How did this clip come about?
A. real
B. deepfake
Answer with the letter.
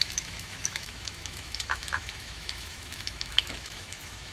B